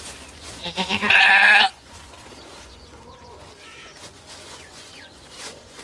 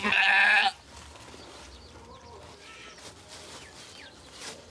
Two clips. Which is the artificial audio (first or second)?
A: first